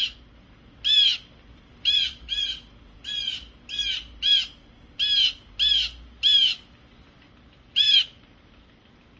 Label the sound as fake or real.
real